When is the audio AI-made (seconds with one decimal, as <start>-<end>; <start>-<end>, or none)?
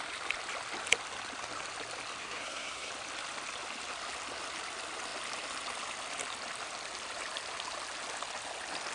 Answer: 2.2-2.9